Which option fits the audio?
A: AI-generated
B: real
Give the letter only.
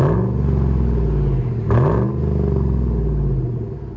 B